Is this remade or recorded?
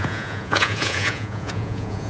remade